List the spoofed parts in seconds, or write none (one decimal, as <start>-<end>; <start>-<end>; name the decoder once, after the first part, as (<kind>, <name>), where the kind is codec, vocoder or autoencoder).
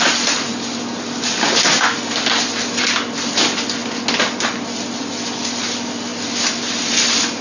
none